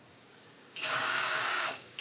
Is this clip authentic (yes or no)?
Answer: no